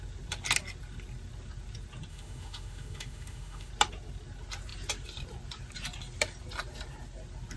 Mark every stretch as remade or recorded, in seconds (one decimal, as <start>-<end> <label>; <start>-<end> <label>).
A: 0.0-2.1 recorded; 2.1-3.7 remade; 3.7-7.6 recorded